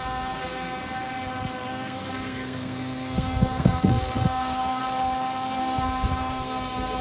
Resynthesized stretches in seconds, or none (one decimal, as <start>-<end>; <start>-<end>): 0.0-0.8; 1.7-4.8; 5.6-7.0